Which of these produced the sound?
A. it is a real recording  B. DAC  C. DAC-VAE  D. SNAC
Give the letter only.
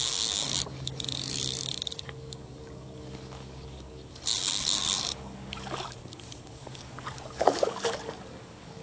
B